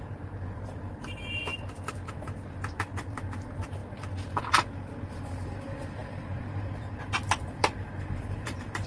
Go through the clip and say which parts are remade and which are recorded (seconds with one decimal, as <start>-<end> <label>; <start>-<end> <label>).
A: 0.0-8.9 remade